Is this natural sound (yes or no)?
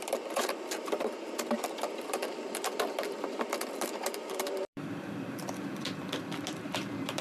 no